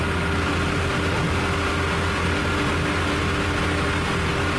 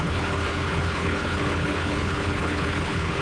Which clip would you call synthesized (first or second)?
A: second